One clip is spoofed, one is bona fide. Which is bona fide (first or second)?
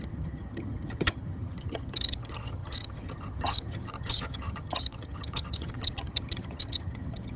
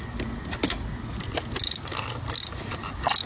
second